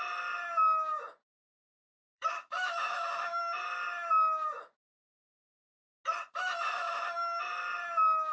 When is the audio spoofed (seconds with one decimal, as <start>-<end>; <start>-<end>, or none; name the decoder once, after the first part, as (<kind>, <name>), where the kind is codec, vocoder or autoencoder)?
1.9-3.4 (autoencoder, DAC-VAE)